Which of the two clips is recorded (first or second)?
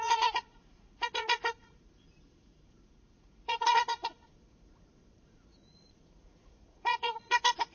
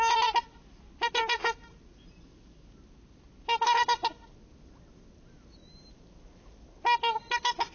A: second